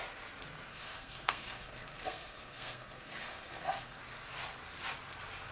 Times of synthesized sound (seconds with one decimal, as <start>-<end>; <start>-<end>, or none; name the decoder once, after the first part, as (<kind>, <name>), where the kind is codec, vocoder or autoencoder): 0.7-4.0 (codec, SNAC)